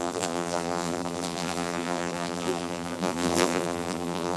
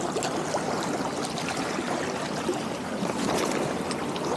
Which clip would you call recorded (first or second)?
second